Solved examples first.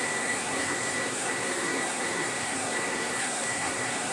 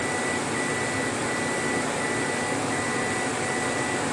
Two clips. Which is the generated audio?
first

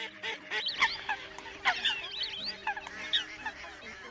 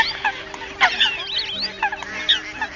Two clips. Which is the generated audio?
first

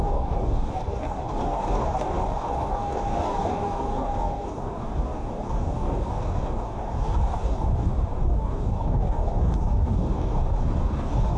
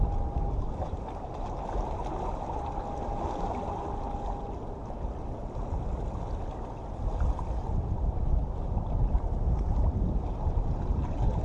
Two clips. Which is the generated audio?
first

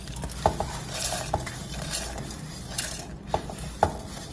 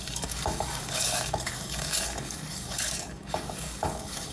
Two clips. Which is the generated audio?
second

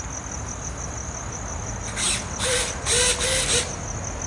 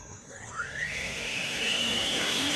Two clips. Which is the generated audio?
second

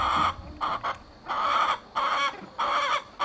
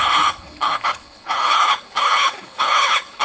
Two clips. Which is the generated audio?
second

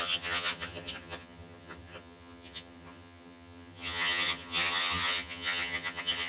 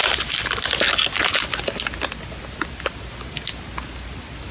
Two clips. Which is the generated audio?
first